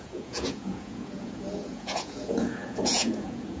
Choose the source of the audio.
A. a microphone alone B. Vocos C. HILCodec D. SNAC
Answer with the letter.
B